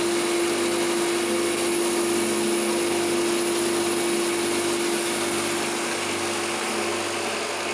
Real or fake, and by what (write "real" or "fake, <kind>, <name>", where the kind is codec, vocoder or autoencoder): real